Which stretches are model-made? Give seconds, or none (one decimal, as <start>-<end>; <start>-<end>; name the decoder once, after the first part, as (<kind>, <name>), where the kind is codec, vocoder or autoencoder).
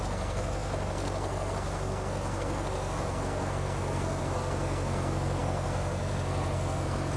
0.0-7.2 (codec, SNAC)